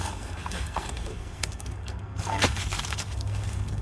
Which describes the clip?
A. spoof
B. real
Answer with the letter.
A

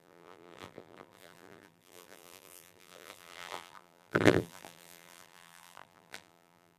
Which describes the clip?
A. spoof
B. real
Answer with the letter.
A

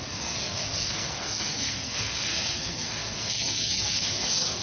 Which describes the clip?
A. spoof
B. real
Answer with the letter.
A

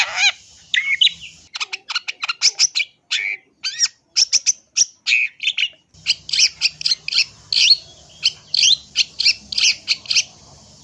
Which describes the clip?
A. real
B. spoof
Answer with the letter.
A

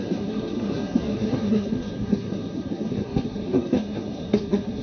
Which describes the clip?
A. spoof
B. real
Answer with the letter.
A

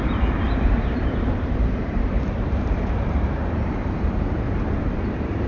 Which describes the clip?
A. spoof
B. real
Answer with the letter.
A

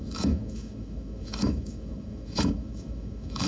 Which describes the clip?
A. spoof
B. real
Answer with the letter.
A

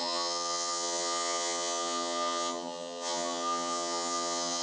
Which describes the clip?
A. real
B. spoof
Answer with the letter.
B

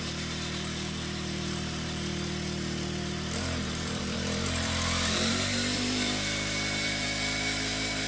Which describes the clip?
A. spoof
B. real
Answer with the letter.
A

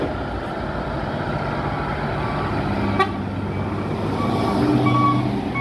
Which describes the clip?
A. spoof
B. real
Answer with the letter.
B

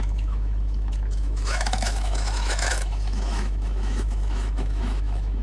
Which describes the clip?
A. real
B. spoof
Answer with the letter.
B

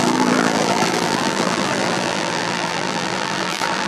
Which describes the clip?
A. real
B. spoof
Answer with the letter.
B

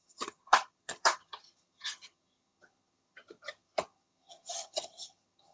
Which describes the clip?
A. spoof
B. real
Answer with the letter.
A